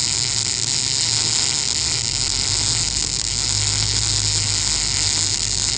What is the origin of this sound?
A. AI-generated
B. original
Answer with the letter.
B